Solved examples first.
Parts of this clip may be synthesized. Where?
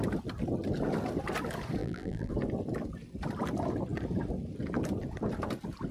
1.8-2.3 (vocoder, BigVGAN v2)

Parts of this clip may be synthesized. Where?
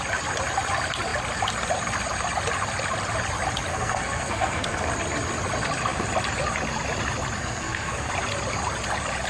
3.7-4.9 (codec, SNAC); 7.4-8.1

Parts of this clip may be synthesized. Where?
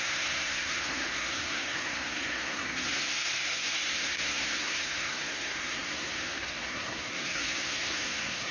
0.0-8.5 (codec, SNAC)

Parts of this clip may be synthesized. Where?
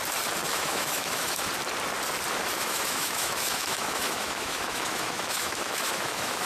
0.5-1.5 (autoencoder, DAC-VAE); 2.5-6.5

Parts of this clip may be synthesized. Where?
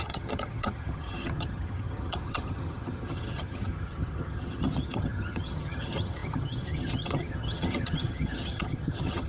0.0-9.3 (vocoder, HiFi-GAN)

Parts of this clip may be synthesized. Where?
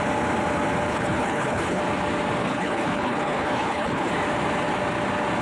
0.9-1.8 (codec, HILCodec); 2.4-4.1